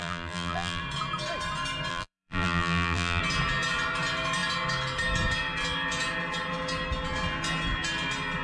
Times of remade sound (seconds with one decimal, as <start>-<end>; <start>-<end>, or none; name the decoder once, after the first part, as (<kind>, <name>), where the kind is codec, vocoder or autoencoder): 0.0-0.8 (vocoder, BigVGAN v2); 1.9-3.2